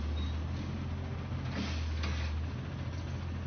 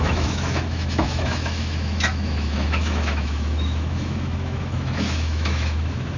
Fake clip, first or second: second